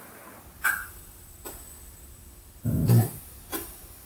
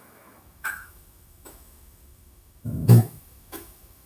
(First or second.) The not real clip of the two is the second